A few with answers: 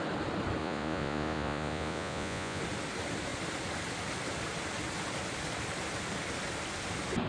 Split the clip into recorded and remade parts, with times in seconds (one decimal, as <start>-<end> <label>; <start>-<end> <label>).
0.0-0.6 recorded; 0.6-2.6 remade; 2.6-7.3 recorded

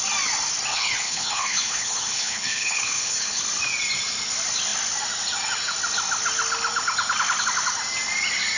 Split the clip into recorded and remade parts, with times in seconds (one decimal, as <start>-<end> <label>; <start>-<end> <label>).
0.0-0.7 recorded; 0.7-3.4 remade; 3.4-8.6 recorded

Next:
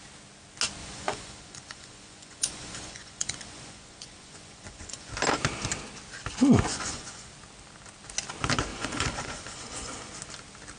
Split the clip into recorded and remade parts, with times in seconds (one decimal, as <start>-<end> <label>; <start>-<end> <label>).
0.0-0.8 recorded; 0.8-5.1 remade; 5.1-6.7 recorded; 6.7-7.3 remade; 7.3-8.7 recorded; 8.7-10.1 remade; 10.1-10.8 recorded